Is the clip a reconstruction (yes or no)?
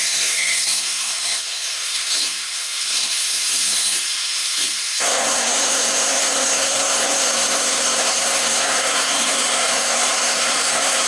yes